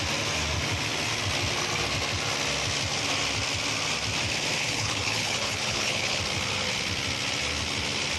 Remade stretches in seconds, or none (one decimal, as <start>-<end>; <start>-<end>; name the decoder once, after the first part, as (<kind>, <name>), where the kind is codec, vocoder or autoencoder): 4.6-6.2 (codec, HILCodec)